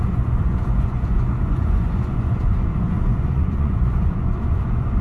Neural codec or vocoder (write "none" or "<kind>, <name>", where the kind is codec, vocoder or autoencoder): vocoder, Vocos